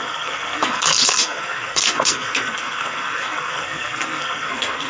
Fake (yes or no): yes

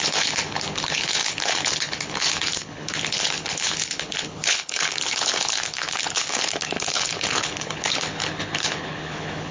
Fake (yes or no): yes